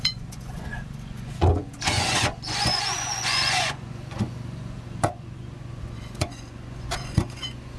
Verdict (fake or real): fake